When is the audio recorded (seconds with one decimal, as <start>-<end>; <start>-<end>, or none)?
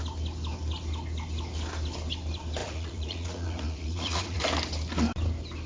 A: 0.0-2.6; 4.4-5.7